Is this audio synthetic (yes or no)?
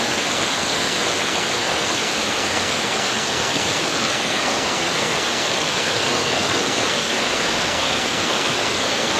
yes